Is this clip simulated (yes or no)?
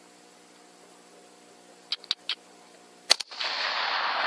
no